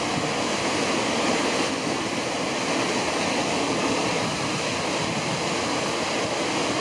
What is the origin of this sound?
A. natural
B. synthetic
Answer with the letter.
A